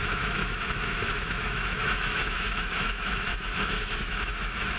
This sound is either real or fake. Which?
fake